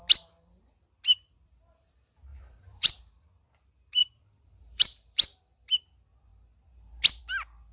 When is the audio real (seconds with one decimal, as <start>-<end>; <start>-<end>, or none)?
0.0-2.3; 3.0-4.0; 5.4-7.7